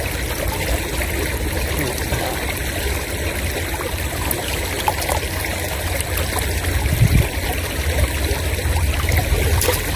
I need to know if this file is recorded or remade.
recorded